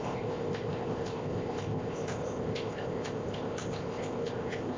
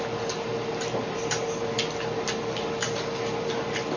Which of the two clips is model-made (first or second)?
first